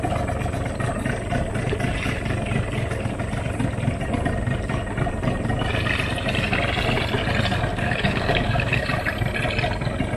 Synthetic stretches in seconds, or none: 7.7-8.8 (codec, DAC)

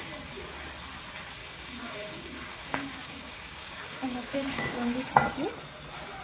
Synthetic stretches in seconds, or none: 1.4-5.1 (codec, DAC)

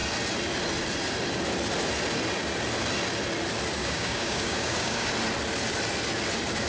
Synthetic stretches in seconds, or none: 3.8-5.1 (codec, DAC)

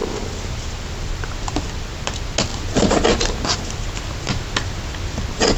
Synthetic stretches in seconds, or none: none

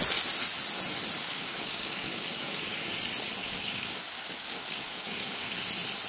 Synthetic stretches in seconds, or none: 1.2-2.9 (codec, DAC); 3.4-5.5

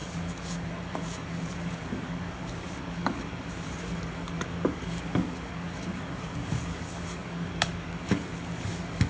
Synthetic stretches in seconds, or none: 0.0-9.1 (codec, DAC)